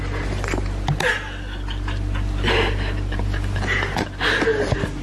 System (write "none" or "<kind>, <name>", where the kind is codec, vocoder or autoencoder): none